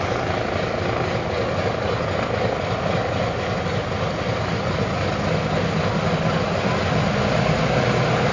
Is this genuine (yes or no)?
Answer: yes